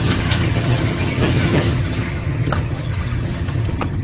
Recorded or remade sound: remade